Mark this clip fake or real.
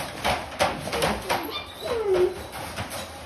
real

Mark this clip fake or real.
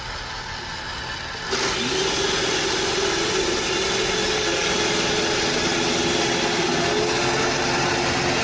real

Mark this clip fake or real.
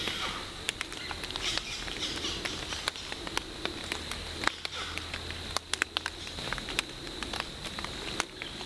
real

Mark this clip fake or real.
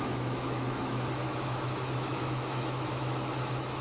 fake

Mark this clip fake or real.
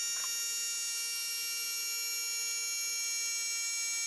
real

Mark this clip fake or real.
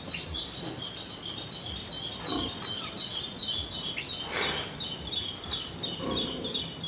real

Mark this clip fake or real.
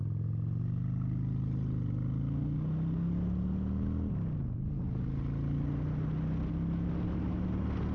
real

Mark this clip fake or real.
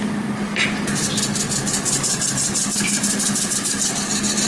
real